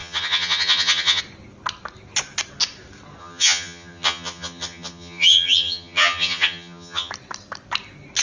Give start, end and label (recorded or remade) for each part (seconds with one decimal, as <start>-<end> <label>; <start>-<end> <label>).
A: 0.0-1.2 remade; 1.2-3.2 recorded; 3.2-7.1 remade; 7.1-8.2 recorded

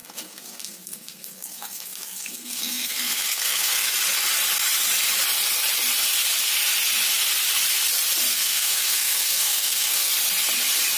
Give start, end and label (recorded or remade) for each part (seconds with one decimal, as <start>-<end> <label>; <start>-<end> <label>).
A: 0.0-3.9 remade; 3.9-8.3 recorded; 8.3-10.1 remade; 10.1-11.0 recorded